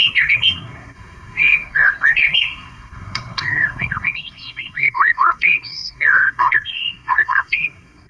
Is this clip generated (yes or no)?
yes